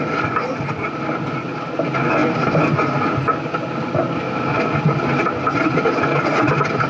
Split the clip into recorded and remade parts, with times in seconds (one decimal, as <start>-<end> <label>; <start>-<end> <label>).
0.0-6.9 recorded

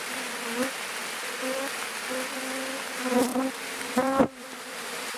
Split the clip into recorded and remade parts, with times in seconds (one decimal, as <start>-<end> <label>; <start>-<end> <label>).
0.0-3.3 recorded; 3.3-5.2 remade

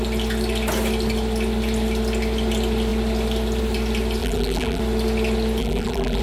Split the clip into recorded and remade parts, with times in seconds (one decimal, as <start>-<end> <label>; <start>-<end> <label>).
0.0-4.2 recorded; 4.2-4.8 remade; 4.8-5.6 recorded; 5.6-6.2 remade

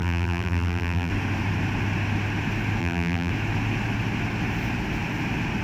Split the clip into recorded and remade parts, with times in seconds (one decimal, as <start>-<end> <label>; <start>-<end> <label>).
0.0-1.1 remade; 1.1-2.8 recorded; 2.8-3.3 remade; 3.3-5.6 recorded

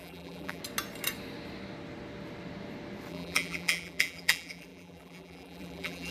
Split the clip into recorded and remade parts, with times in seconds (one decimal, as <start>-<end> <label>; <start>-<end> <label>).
0.0-0.6 remade; 0.6-3.1 recorded; 3.1-6.1 remade

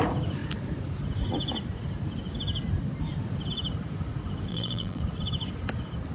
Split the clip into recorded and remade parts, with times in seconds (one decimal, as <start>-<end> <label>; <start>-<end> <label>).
0.0-4.5 recorded; 4.5-5.0 remade; 5.0-6.1 recorded